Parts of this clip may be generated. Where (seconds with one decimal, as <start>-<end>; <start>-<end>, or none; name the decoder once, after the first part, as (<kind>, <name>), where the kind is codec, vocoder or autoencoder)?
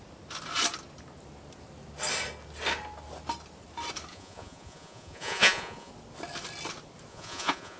4.1-5.9 (vocoder, Vocos); 7.1-7.8